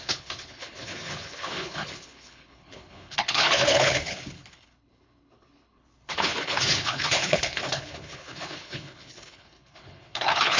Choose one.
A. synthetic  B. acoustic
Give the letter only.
A